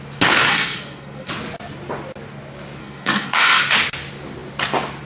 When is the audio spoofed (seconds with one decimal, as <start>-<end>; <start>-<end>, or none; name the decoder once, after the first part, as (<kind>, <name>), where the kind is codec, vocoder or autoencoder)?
0.5-1.3 (codec, SNAC); 2.8-3.6

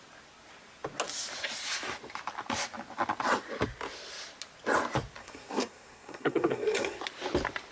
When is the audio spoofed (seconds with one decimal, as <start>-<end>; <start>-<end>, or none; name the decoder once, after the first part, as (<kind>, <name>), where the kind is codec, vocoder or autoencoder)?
5.2-7.0 (codec, SNAC)

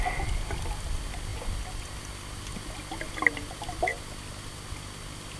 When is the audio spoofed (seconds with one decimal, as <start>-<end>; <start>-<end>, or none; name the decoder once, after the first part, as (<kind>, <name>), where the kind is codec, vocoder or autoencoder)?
none

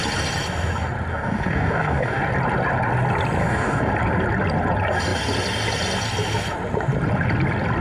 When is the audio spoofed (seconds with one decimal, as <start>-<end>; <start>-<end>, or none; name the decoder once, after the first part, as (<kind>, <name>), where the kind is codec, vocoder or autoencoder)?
1.1-2.2 (codec, DAC); 3.4-3.9